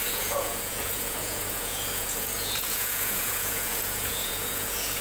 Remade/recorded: remade